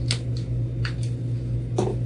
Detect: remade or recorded recorded